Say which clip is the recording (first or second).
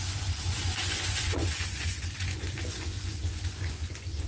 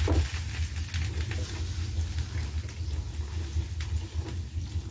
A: second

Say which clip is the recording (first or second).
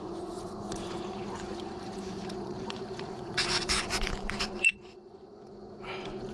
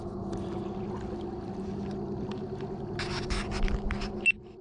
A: second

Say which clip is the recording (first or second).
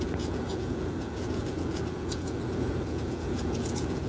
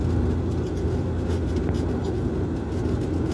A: second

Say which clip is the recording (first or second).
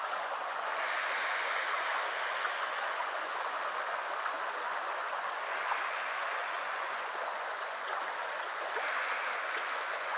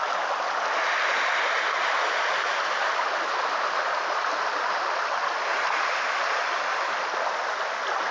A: second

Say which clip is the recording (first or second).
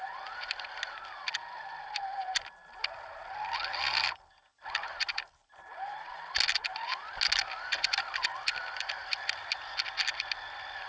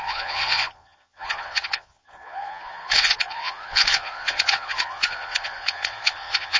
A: first